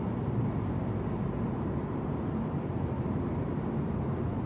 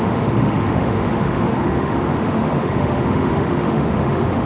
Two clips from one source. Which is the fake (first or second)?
second